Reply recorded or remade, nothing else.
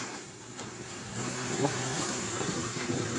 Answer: remade